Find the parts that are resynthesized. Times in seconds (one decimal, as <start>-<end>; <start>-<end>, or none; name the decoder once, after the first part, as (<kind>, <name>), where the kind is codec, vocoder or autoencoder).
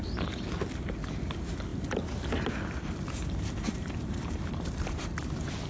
none